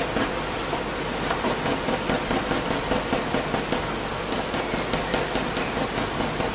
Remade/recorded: recorded